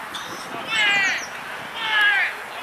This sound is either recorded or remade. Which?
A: recorded